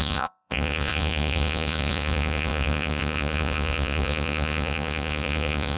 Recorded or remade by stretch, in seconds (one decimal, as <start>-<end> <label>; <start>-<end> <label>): 0.0-5.8 remade